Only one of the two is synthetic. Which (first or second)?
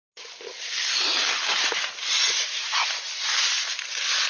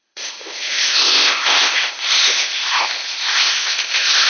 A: second